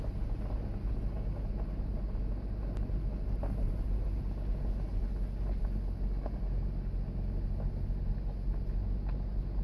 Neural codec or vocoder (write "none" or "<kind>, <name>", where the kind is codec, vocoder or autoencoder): none